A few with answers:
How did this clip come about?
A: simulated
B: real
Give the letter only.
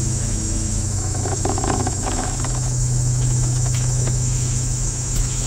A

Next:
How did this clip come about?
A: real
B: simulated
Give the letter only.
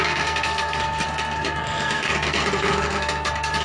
B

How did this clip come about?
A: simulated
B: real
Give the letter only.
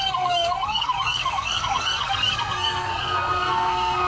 A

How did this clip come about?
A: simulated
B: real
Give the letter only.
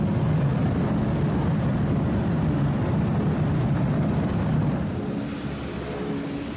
B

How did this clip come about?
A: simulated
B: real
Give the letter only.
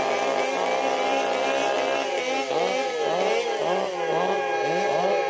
B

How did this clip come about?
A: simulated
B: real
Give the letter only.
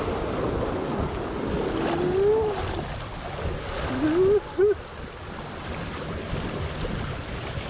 B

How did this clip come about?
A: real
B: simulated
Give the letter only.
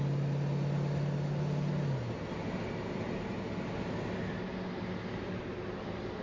A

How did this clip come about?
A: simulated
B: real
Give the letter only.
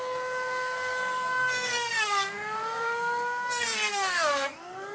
A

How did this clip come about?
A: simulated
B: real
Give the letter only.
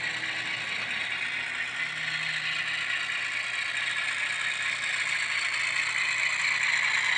B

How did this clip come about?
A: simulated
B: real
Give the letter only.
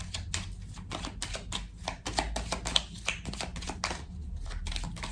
B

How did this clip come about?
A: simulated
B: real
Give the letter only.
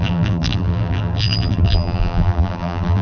A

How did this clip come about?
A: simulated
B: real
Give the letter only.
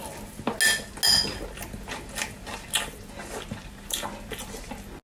B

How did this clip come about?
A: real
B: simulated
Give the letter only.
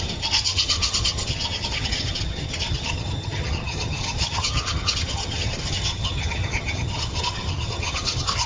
B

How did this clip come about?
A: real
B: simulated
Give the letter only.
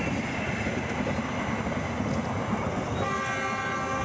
A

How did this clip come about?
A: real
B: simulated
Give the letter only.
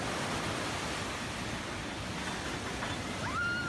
A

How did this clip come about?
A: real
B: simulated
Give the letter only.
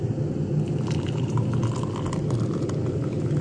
A